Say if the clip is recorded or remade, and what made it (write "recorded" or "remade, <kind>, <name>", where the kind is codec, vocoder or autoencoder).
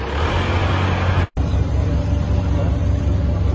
recorded